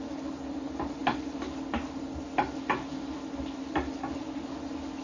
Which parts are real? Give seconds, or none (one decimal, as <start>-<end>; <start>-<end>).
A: 0.0-5.0